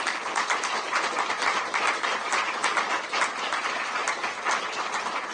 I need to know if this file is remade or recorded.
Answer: recorded